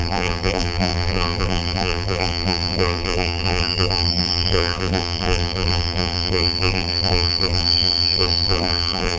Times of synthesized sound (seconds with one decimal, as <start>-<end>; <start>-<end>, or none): 0.0-9.2